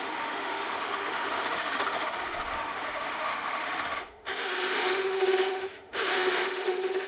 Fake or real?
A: fake